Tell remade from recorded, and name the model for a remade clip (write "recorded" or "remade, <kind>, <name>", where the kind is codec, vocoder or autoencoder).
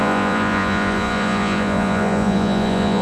remade, vocoder, Vocos